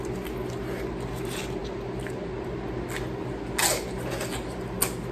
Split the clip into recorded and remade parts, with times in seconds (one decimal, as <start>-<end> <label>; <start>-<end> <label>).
0.0-5.1 recorded